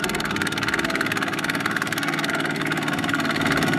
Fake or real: fake